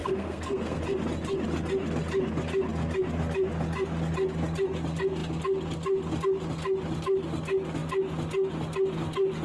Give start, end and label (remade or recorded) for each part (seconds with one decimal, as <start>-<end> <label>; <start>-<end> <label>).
0.0-0.8 remade; 0.8-9.4 recorded